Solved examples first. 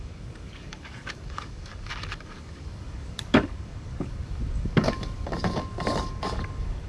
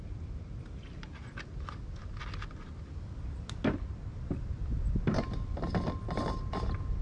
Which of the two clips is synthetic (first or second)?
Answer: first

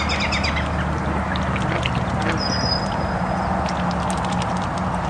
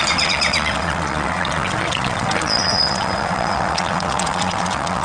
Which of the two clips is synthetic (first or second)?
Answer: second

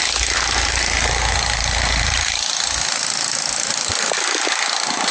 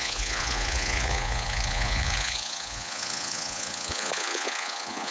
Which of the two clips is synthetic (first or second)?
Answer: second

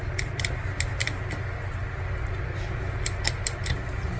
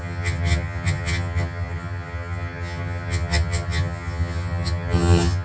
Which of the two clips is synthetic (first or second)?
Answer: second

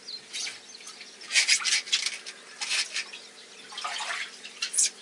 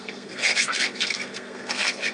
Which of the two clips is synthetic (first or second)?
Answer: second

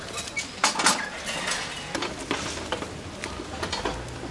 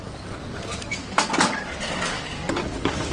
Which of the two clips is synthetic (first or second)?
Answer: second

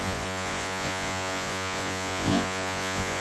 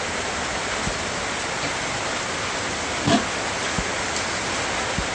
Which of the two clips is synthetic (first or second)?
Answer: first